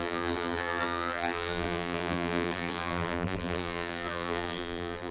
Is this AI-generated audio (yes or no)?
yes